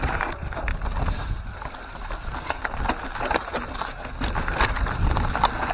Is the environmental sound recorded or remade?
recorded